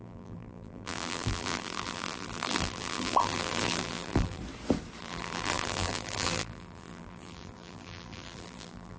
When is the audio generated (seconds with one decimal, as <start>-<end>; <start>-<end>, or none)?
0.0-4.4; 5.0-9.0